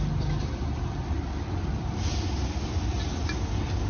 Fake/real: real